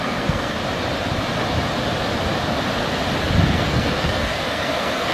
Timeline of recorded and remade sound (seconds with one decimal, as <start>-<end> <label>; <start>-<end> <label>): 0.0-0.6 remade; 0.6-3.4 recorded; 3.4-5.1 remade